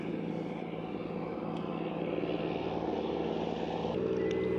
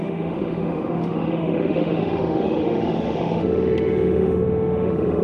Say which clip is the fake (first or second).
second